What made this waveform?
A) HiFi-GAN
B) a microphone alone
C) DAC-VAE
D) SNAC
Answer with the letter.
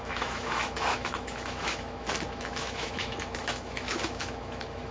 C